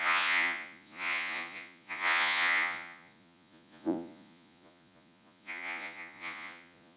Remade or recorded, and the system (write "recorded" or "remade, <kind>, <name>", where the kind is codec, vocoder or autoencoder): remade, vocoder, Vocos